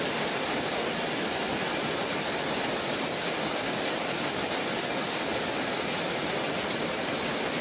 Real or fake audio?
real